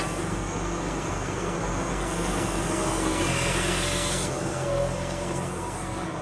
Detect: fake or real fake